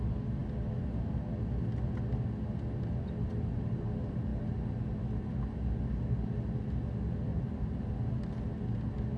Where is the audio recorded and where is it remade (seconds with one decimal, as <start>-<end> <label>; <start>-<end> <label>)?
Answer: 0.0-7.3 recorded; 7.3-7.9 remade; 7.9-9.2 recorded